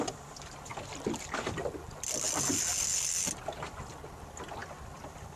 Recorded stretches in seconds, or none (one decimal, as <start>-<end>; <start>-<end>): 0.0-4.6